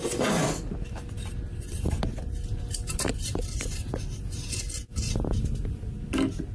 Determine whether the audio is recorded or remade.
recorded